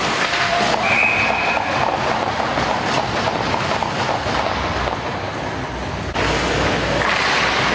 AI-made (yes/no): no